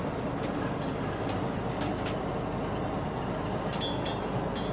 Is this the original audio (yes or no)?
yes